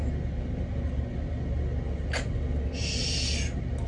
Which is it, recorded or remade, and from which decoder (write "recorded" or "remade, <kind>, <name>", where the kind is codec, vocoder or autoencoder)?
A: recorded